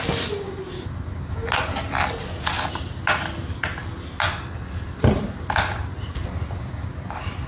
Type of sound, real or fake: real